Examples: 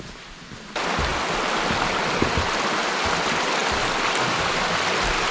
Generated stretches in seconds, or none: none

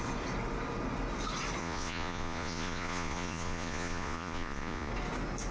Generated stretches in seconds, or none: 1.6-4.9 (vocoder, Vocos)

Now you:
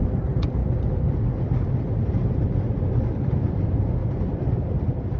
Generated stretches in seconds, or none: none

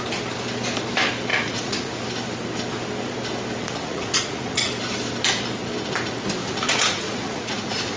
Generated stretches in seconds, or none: 1.3-1.9 (vocoder, Vocos); 3.6-4.7; 6.4-8.0